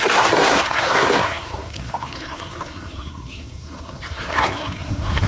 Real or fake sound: fake